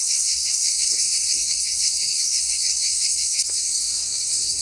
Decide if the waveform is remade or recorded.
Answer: remade